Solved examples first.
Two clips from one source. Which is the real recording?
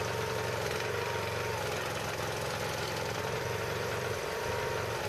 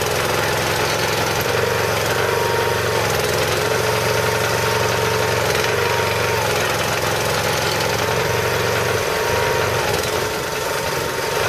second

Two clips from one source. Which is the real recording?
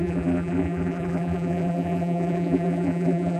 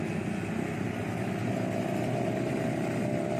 second